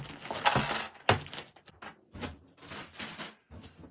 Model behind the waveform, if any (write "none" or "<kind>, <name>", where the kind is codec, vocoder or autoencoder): none